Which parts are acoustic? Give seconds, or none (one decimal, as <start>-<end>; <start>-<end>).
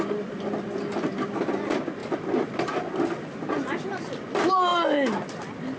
0.0-5.8